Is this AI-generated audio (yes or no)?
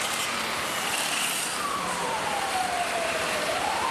yes